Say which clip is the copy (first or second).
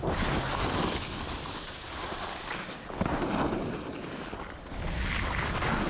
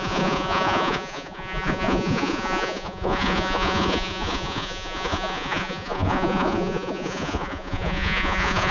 second